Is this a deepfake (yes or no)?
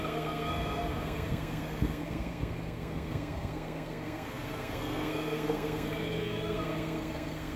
yes